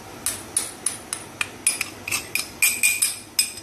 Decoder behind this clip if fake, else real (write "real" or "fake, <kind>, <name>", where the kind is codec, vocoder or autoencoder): real